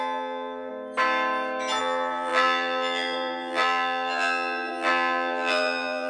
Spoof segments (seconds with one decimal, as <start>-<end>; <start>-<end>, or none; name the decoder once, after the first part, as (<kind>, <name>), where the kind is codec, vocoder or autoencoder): 0.0-0.7 (vocoder, BigVGAN v2); 1.8-6.1